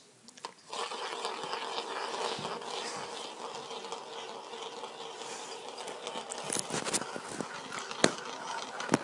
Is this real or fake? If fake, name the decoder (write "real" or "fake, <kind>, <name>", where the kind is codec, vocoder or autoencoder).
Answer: real